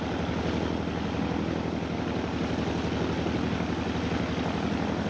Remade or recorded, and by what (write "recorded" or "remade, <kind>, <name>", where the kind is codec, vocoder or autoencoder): recorded